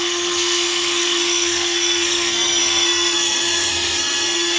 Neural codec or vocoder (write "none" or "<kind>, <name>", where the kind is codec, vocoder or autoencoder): codec, SNAC